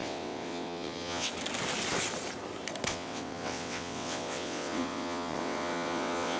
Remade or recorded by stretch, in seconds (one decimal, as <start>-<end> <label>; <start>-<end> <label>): 0.0-1.3 remade; 1.3-2.9 recorded; 2.9-6.4 remade